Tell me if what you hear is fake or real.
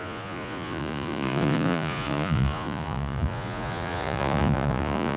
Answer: fake